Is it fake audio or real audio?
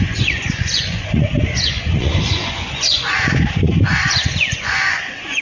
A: fake